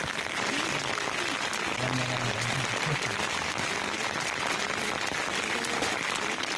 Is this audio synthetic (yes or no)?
no